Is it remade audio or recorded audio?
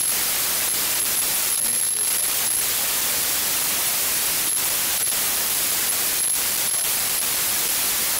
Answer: recorded